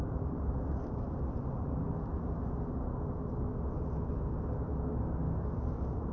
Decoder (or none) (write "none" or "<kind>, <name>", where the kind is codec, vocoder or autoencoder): none